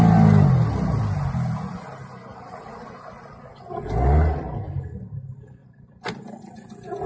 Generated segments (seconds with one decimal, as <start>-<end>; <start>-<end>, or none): none